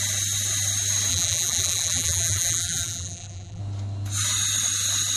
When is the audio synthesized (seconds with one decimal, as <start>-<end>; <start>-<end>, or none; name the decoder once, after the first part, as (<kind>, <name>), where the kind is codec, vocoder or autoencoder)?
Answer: 1.1-3.6 (vocoder, BigVGAN v2)